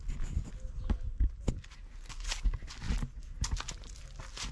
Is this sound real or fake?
real